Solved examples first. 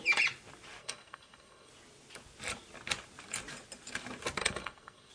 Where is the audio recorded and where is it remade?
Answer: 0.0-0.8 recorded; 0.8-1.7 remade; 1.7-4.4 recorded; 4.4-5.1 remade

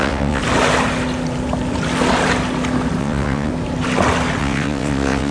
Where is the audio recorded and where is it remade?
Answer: 0.0-0.4 remade; 0.4-3.0 recorded; 3.0-3.5 remade; 3.5-4.4 recorded; 4.4-5.3 remade